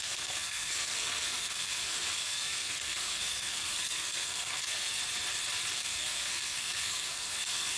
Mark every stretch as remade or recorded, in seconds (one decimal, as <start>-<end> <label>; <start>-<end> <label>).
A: 0.0-5.0 remade; 5.0-5.7 recorded; 5.7-7.8 remade